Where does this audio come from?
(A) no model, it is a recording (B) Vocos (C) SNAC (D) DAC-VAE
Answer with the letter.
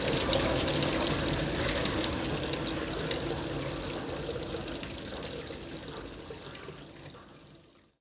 A